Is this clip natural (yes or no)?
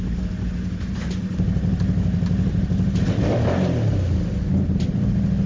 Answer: yes